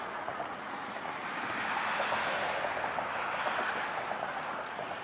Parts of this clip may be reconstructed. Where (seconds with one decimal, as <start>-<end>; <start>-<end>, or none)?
0.0-1.2; 4.2-5.0